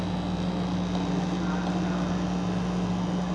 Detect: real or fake real